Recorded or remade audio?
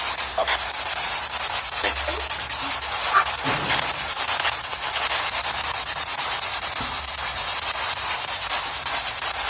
recorded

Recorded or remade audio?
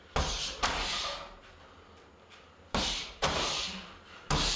recorded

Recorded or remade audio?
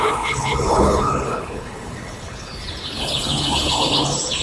remade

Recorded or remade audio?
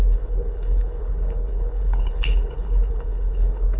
remade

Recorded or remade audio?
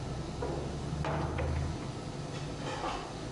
recorded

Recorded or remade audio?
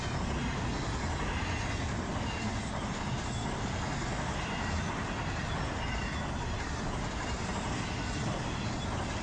recorded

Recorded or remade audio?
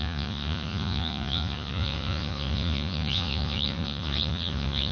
remade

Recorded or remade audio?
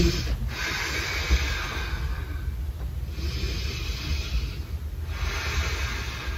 recorded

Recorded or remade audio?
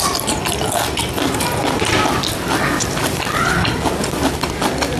recorded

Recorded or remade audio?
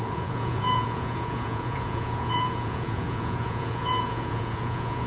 remade